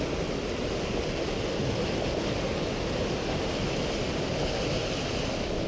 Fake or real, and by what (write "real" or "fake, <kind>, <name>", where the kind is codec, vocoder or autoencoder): real